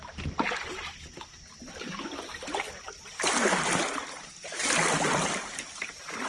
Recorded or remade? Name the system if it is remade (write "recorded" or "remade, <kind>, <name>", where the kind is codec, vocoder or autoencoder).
recorded